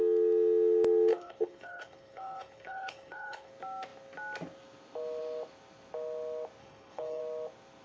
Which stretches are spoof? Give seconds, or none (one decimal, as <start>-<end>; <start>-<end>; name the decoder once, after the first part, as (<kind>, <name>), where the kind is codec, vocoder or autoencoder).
1.1-3.5 (codec, HILCodec); 6.6-7.2